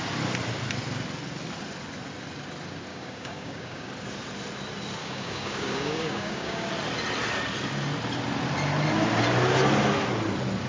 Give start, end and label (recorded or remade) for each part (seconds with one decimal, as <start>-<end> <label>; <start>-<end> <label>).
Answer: 0.0-2.9 recorded; 2.9-3.9 remade; 3.9-5.0 recorded; 5.0-6.7 remade; 6.7-10.7 recorded